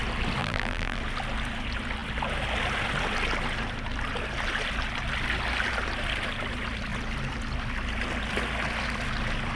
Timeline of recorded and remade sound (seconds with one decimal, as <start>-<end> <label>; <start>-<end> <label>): 0.0-0.4 recorded; 0.4-1.0 remade; 1.0-9.6 recorded